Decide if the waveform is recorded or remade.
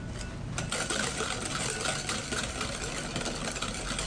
recorded